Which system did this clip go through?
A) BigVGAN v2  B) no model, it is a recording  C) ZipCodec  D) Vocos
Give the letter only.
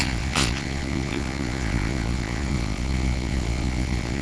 D